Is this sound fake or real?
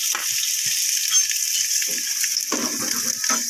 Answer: real